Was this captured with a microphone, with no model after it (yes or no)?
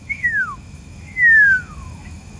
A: no